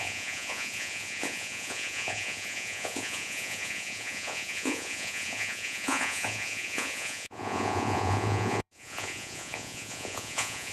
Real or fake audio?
fake